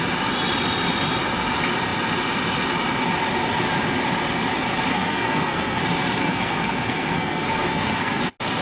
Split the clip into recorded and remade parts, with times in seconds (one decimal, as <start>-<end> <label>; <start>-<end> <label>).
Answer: 0.0-4.9 recorded; 4.9-5.8 remade; 5.8-6.2 recorded; 6.2-8.2 remade; 8.2-8.6 recorded

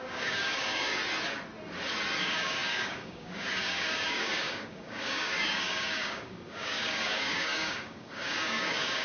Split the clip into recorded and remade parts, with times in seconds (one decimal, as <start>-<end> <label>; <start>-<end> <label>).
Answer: 0.0-0.9 remade; 0.9-2.2 recorded; 2.2-9.0 remade

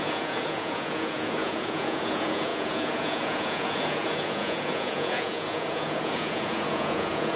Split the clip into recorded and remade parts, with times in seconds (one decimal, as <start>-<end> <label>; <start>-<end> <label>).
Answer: 0.0-7.4 remade

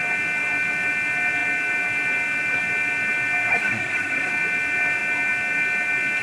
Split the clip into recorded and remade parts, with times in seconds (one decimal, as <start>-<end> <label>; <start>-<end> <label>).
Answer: 0.0-3.5 recorded; 3.5-4.3 remade; 4.3-6.2 recorded

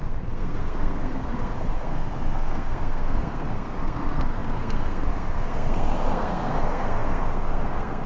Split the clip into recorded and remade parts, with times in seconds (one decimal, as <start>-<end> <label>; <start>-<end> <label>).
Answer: 0.0-8.1 remade

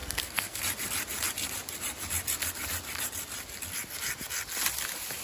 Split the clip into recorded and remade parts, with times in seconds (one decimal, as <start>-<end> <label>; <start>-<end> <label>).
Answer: 0.0-0.6 remade; 0.6-5.2 recorded